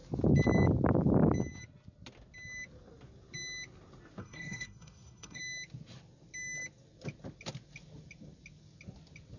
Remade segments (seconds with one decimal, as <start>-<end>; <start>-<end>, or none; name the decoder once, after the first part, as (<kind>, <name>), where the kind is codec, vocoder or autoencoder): 4.2-5.4 (codec, SNAC)